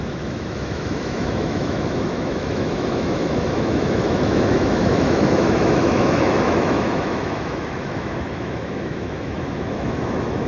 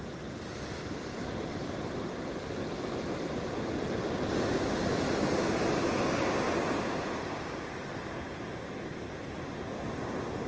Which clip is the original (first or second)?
second